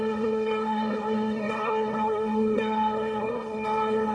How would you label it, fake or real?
fake